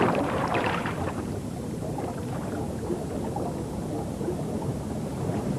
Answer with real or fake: fake